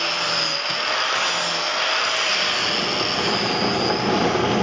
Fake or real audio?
real